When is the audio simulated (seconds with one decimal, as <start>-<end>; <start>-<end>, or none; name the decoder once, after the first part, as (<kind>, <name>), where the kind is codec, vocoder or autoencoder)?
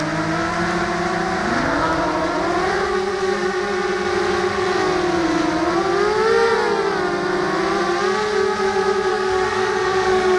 9.1-10.4 (codec, SNAC)